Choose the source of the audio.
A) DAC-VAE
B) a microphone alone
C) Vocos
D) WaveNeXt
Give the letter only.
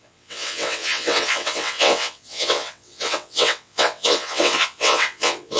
D